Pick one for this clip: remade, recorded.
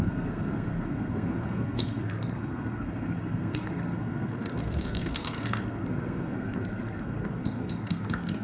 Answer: remade